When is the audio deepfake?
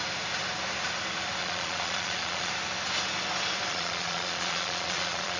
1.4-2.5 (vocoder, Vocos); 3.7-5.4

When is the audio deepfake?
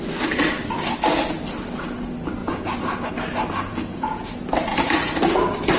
2.4-3.1 (vocoder, Vocos); 3.7-4.3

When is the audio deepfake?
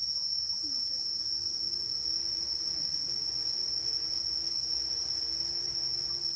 0.0-1.2 (vocoder, Vocos)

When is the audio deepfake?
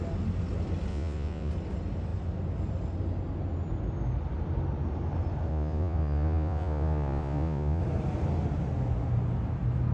0.9-1.5 (vocoder, Vocos); 5.5-7.8